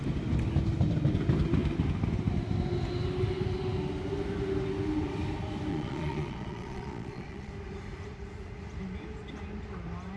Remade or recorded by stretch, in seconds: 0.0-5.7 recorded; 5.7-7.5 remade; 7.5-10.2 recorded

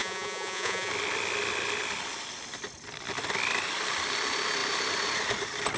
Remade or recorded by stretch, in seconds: 0.0-0.9 remade; 0.9-5.8 recorded

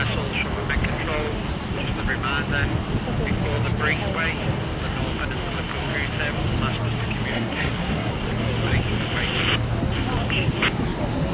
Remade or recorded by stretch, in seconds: 0.0-7.3 recorded; 7.3-8.1 remade; 8.1-11.3 recorded

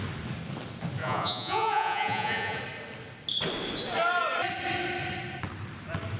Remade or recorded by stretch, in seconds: 0.0-1.0 recorded; 1.0-2.6 remade; 2.6-6.2 recorded

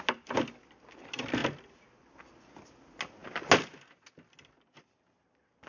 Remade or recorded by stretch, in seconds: 0.0-5.7 recorded

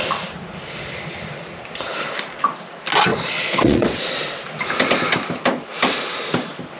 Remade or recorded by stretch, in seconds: 0.0-3.1 recorded; 3.1-4.0 remade; 4.0-6.8 recorded

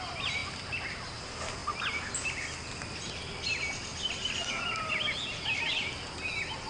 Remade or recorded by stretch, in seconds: 0.0-6.7 recorded

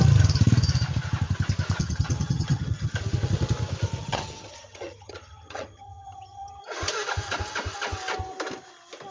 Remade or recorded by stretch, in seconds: 0.0-1.8 recorded; 1.8-2.9 remade; 2.9-4.0 recorded; 4.0-6.6 remade; 6.6-9.1 recorded